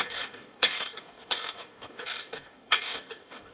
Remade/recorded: remade